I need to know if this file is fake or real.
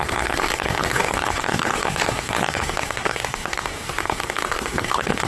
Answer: fake